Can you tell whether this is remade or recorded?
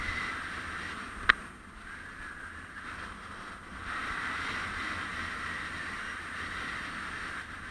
recorded